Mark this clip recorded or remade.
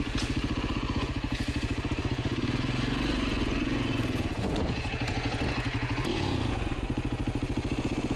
remade